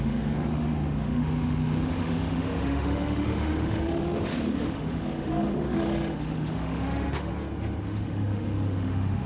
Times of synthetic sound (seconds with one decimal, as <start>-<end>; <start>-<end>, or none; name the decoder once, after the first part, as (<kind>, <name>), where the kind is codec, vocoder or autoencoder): 0.0-7.3 (autoencoder, DAC-VAE); 7.8-9.3